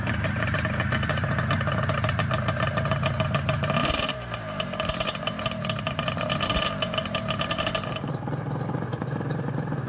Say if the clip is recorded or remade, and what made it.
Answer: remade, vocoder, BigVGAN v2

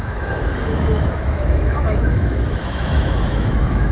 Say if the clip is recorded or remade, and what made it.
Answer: remade, autoencoder, DAC-VAE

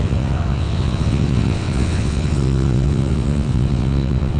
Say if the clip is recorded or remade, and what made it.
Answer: remade, vocoder, WaveNeXt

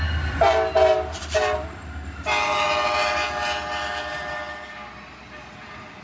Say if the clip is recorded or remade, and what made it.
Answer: recorded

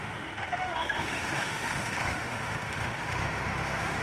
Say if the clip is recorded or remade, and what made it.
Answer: remade, autoencoder, DAC-VAE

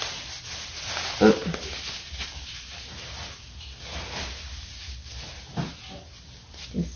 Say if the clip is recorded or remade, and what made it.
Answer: recorded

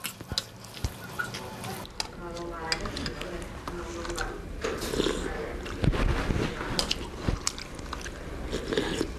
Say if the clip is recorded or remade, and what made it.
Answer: recorded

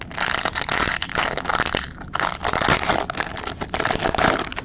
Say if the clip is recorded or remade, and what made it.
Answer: recorded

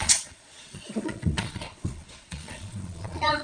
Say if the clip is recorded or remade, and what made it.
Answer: remade, vocoder, Vocos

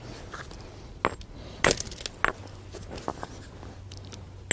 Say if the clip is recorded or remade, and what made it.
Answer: recorded